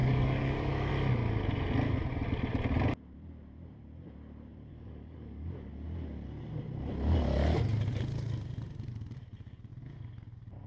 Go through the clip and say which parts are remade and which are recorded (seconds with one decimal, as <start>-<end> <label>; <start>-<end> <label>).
0.0-0.9 remade; 0.9-4.7 recorded; 4.7-5.5 remade; 5.5-10.7 recorded